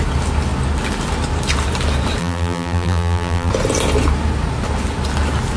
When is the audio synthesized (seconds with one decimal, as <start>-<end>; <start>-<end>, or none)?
2.2-3.5